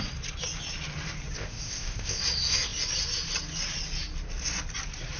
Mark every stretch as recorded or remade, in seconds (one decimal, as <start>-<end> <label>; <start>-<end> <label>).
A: 0.0-1.4 recorded; 1.4-2.2 remade; 2.2-5.2 recorded